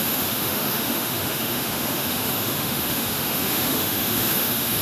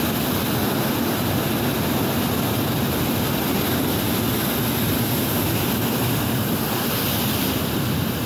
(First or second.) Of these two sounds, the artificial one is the first